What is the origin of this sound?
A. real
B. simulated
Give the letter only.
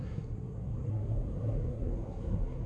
B